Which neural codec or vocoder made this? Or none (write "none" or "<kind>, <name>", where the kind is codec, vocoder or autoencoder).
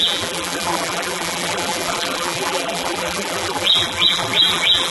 vocoder, BigVGAN v2